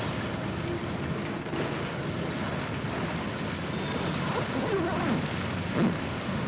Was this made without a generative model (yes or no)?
yes